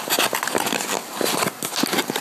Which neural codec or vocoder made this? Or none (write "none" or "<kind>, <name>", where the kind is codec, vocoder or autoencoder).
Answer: none